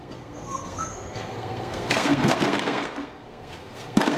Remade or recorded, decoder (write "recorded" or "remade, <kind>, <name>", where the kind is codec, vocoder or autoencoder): remade, codec, SNAC